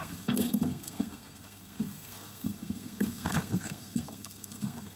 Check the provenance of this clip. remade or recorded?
remade